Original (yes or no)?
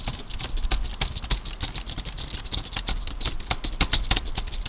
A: yes